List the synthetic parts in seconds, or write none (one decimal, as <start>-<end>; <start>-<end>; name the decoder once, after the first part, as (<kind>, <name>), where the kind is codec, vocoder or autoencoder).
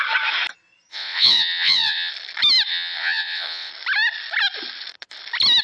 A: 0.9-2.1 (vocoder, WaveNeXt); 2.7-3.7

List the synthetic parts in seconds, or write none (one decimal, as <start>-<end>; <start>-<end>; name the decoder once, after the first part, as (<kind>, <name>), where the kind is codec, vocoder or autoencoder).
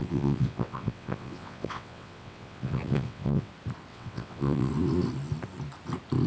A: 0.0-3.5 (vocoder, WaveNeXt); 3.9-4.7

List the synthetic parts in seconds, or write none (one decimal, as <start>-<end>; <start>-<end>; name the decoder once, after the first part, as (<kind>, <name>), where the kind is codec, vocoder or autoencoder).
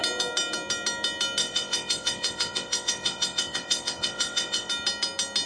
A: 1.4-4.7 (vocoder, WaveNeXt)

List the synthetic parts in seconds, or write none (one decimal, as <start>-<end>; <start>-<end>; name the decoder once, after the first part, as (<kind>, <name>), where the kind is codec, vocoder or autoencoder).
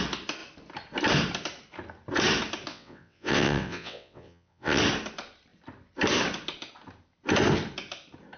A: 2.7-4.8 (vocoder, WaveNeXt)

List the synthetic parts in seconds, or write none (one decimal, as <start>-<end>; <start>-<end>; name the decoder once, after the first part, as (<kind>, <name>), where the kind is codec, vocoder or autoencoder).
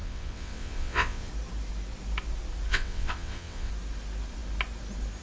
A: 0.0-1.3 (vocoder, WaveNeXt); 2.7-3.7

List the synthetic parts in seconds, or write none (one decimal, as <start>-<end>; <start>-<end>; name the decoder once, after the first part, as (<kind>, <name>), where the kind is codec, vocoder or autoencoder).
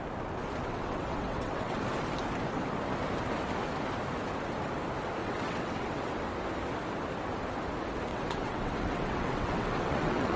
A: 0.6-1.8 (vocoder, WaveNeXt); 5.2-6.0; 8.1-10.4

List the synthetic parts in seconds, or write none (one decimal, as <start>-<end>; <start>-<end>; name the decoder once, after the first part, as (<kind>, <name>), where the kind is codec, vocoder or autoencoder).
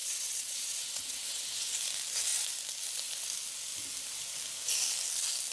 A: 0.0-1.8 (vocoder, WaveNeXt)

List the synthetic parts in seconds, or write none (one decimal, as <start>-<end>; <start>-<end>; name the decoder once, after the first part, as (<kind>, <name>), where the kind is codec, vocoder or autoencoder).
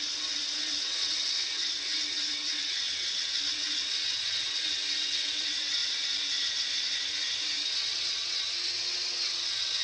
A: 0.0-9.8 (vocoder, WaveNeXt)